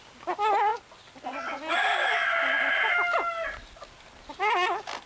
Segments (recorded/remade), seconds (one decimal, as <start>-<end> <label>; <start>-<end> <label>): 0.0-5.1 recorded